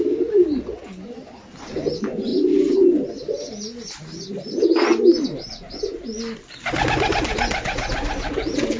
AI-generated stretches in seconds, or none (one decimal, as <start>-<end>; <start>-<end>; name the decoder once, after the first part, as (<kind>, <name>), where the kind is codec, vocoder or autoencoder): none